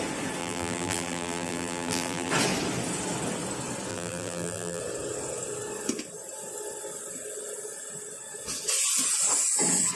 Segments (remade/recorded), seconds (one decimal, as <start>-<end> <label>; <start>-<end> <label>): 0.0-0.4 recorded; 0.4-2.3 remade; 2.3-3.9 recorded; 3.9-4.8 remade; 4.8-10.0 recorded